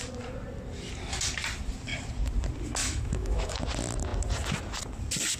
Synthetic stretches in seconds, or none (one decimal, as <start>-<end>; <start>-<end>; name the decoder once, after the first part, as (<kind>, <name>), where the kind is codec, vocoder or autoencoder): 2.8-3.6 (autoencoder, DAC-VAE)